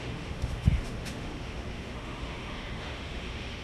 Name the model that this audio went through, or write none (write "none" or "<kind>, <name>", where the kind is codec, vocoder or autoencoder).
autoencoder, DAC-VAE